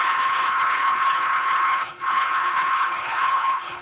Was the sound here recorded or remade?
remade